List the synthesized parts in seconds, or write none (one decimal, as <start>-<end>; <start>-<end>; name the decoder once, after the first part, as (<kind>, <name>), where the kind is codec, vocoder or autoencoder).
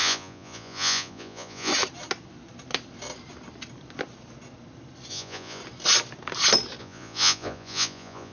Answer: 0.0-1.7 (vocoder, Vocos); 5.1-5.6; 6.8-8.3